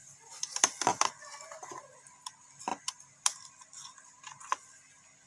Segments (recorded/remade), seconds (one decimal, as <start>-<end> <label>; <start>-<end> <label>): 0.0-1.2 remade; 1.2-2.7 recorded; 2.7-3.5 remade; 3.5-5.3 recorded

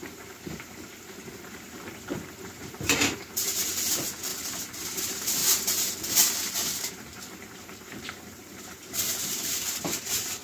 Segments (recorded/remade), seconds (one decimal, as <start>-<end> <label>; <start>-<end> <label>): 0.0-4.3 remade; 4.3-5.0 recorded; 5.0-5.4 remade; 5.4-6.8 recorded; 6.8-10.4 remade

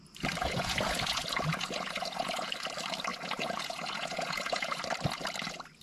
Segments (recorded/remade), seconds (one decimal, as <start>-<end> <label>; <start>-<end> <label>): 0.0-0.4 recorded; 0.4-2.5 remade; 2.5-3.1 recorded; 3.1-4.8 remade; 4.8-5.8 recorded